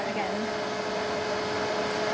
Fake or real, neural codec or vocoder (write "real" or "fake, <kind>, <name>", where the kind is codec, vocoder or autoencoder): real